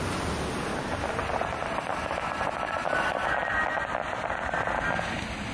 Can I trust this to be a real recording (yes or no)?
yes